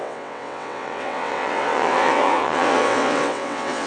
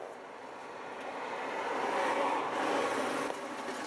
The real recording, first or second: second